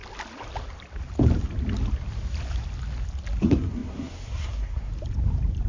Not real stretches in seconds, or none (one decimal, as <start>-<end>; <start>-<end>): 3.4-4.9